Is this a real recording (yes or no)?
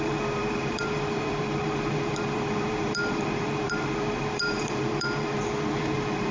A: no